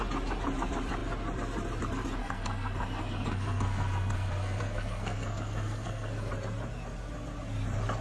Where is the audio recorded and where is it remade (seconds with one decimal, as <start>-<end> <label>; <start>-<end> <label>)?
0.0-2.2 recorded; 2.2-6.3 remade; 6.3-8.0 recorded

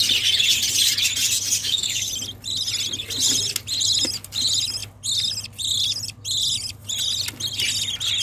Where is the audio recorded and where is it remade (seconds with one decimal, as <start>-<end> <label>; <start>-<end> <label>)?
0.0-1.6 recorded; 1.6-2.1 remade; 2.1-8.2 recorded

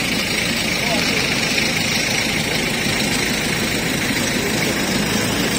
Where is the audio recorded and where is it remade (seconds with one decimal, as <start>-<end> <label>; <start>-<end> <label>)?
0.0-2.2 remade; 2.2-5.6 recorded

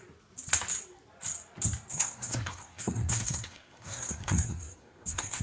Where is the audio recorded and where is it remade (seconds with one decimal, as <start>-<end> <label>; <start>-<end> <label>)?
0.0-1.9 recorded; 1.9-5.4 remade